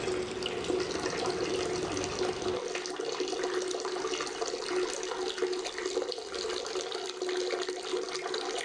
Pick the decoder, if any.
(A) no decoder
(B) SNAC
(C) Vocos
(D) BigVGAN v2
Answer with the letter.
A